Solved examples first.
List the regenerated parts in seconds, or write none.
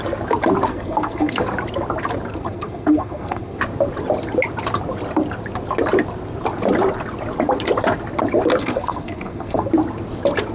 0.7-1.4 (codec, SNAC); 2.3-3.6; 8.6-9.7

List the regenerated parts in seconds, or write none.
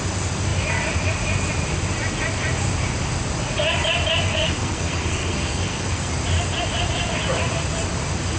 4.3-6.1 (codec, SNAC)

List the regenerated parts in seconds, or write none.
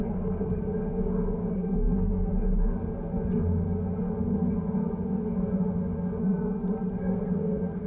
0.0-0.7 (codec, SNAC); 1.5-2.3; 6.2-7.9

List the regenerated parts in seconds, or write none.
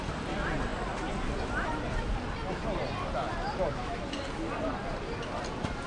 none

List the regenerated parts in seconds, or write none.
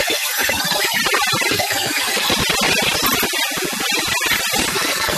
0.0-1.0 (codec, SNAC); 1.5-2.3; 4.7-5.2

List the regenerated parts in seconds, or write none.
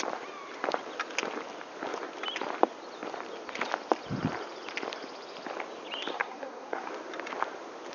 6.1-6.9 (codec, SNAC)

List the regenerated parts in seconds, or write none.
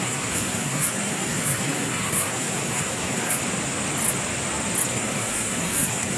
0.0-3.4 (codec, SNAC); 4.9-6.2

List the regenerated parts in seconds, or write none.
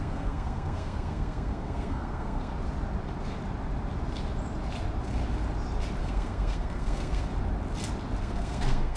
0.0-2.5 (codec, SNAC); 6.0-7.3; 8.2-9.0